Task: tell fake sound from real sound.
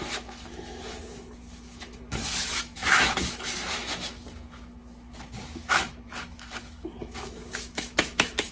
fake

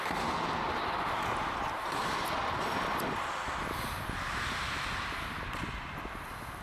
real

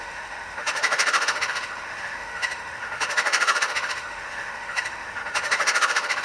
fake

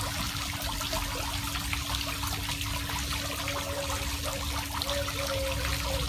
real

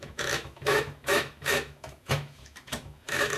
fake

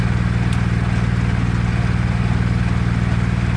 real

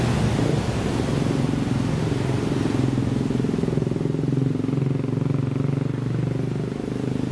real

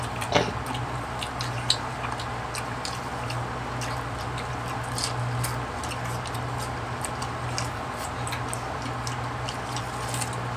real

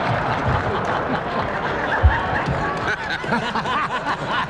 real